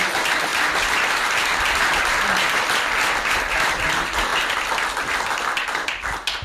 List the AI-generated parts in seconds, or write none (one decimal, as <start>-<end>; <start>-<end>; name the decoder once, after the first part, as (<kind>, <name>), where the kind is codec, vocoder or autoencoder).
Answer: none

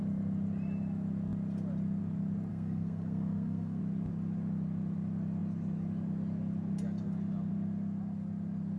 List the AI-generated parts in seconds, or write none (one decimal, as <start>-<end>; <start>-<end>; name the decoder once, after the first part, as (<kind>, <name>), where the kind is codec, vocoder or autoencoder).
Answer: 2.5-3.8 (codec, SNAC)

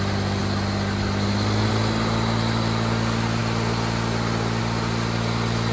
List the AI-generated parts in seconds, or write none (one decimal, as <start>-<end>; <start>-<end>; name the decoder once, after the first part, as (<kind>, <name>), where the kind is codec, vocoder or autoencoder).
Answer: none

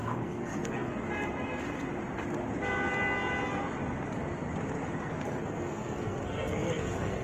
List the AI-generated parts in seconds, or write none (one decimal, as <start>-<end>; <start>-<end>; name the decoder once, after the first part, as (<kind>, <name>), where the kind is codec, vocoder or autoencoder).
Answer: 0.0-0.9 (codec, SNAC); 4.9-7.2

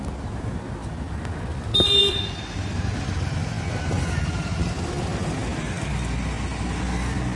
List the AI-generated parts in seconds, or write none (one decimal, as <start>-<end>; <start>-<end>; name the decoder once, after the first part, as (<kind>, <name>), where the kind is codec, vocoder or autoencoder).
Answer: none

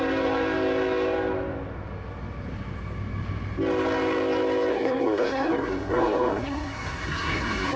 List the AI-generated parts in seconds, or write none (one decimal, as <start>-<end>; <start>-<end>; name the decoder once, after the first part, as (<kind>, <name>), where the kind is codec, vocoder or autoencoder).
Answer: 4.7-7.8 (codec, SNAC)

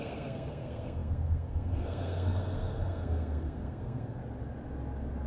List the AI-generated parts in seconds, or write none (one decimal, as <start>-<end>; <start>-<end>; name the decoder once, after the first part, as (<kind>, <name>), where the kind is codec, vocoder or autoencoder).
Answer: 0.0-4.2 (codec, SNAC)

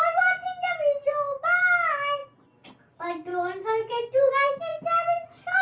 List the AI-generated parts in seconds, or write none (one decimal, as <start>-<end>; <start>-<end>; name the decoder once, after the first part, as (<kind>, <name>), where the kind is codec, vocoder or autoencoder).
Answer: none